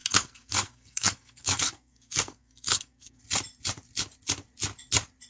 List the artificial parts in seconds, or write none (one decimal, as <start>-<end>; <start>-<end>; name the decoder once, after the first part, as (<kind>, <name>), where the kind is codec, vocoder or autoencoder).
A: 0.0-3.2 (codec, SNAC)